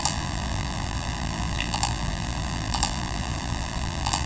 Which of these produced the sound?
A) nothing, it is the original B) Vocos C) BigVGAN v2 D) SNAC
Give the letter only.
C